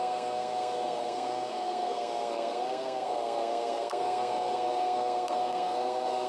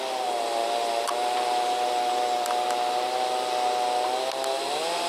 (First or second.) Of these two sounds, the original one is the second